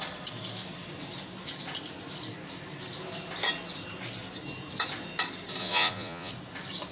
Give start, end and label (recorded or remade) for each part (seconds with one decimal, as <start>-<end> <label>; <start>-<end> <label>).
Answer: 0.0-5.6 recorded; 5.6-6.3 remade; 6.3-6.9 recorded